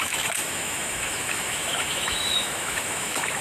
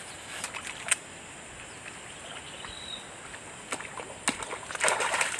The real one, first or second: second